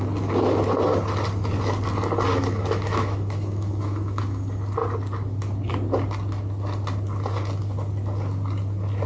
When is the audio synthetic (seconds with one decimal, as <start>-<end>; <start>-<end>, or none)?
2.3-4.2